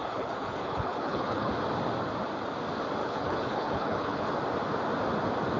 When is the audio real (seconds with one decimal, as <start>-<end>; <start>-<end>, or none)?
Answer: 1.5-3.0; 4.3-5.6